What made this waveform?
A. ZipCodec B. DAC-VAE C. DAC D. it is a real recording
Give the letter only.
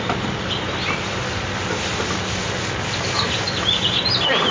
D